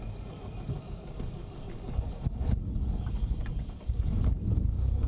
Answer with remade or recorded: remade